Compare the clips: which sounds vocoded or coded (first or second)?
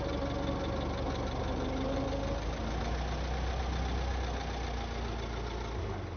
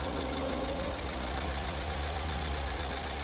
second